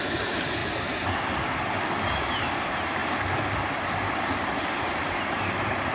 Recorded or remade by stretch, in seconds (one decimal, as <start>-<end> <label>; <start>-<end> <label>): 0.0-0.6 remade; 0.6-2.3 recorded; 2.3-3.0 remade; 3.0-4.2 recorded; 4.2-5.9 remade